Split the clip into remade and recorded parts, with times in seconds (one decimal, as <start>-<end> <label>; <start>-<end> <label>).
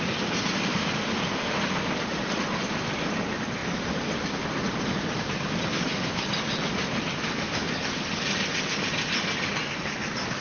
0.0-10.4 recorded